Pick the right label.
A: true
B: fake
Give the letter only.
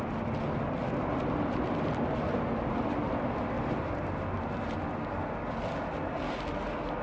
A